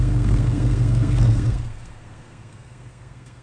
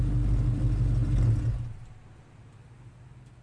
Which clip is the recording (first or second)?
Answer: second